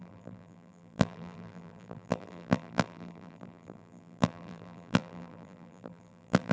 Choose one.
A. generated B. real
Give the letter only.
A